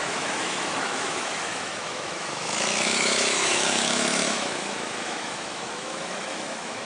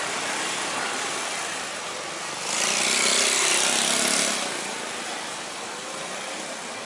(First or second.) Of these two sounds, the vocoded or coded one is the first